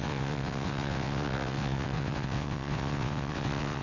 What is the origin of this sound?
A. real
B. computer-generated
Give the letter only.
B